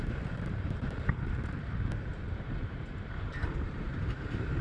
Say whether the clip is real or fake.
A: fake